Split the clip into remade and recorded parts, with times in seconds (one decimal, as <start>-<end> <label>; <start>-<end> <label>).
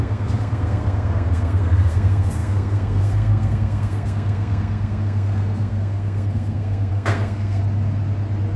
0.0-7.6 remade; 7.6-8.6 recorded